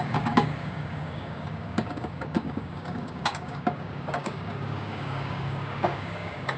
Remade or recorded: remade